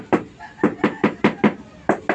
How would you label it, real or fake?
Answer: real